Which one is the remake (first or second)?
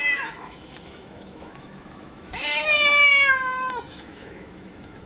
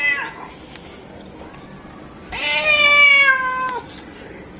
first